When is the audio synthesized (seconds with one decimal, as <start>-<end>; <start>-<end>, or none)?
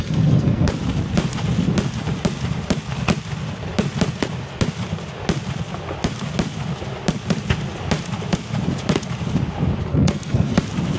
0.0-0.7; 9.9-10.6